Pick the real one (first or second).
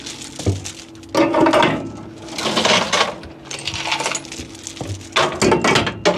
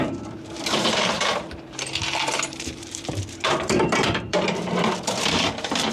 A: first